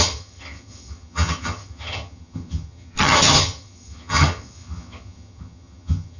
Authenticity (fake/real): fake